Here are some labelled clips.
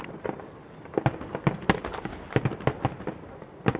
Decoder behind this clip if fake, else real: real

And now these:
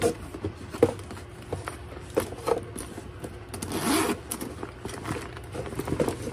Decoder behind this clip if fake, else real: real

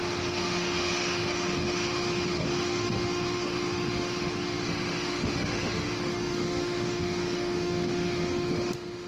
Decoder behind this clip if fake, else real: fake, autoencoder, DAC-VAE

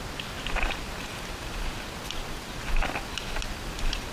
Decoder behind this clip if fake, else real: real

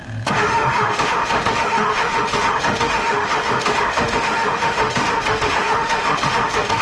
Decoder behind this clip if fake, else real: fake, autoencoder, DAC-VAE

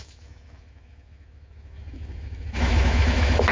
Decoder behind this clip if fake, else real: fake, autoencoder, DAC-VAE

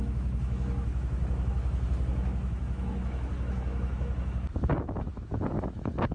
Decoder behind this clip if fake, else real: fake, autoencoder, DAC-VAE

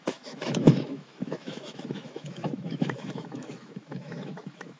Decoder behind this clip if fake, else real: fake, autoencoder, DAC-VAE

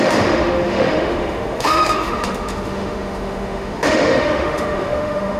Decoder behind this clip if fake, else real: fake, autoencoder, DAC-VAE